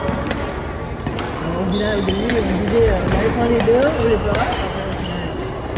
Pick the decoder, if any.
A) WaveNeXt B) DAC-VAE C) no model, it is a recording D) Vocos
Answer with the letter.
C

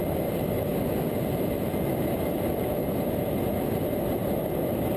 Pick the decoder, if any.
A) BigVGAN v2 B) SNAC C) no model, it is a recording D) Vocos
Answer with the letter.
C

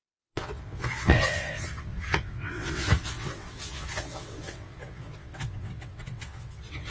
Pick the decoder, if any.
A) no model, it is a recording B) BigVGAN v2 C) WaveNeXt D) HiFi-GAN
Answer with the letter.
C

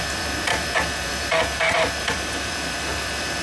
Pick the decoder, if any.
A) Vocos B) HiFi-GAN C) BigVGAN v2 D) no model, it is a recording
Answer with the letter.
C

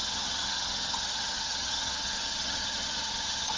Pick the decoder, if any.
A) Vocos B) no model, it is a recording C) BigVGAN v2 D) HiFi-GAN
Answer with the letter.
D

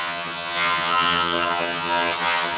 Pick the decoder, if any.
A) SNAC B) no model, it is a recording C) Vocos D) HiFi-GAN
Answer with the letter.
D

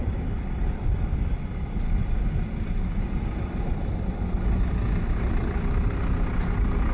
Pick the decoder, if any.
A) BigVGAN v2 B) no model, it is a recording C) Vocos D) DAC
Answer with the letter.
B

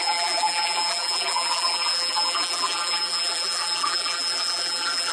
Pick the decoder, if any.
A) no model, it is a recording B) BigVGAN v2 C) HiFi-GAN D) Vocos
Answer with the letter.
B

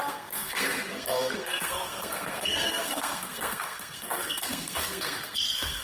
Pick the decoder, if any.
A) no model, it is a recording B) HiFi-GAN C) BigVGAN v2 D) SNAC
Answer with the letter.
D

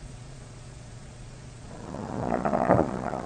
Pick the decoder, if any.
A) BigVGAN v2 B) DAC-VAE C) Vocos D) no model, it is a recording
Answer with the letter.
C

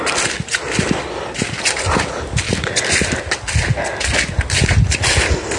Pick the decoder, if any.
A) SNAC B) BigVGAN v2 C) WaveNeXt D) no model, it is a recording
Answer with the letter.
D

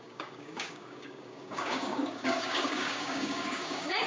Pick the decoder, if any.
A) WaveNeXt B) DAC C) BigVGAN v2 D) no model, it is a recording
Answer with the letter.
B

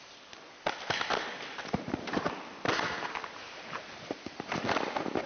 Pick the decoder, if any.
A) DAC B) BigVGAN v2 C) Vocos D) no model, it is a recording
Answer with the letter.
B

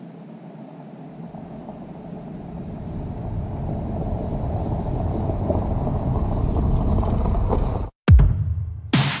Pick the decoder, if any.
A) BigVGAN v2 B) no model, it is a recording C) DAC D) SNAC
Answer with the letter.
B